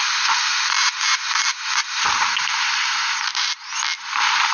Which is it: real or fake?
real